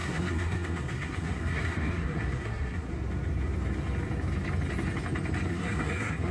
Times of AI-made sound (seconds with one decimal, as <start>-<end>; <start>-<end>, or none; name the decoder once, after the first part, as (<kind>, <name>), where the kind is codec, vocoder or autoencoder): 0.0-2.9 (codec, SNAC); 5.5-6.3